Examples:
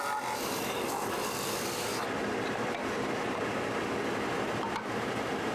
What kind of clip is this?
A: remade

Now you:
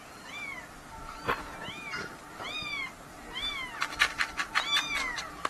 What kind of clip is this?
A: recorded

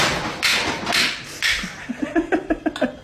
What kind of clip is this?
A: recorded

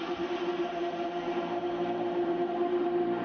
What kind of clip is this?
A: remade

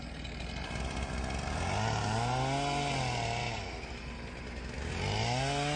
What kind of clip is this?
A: recorded